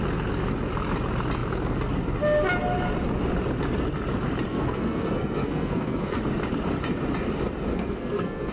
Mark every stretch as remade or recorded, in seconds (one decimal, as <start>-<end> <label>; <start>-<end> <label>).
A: 0.0-4.5 recorded; 4.5-6.2 remade; 6.2-7.7 recorded; 7.7-8.5 remade